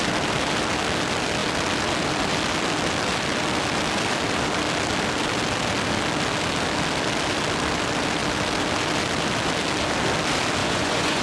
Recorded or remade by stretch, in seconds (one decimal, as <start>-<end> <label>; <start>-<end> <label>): 0.0-10.6 recorded; 10.6-11.2 remade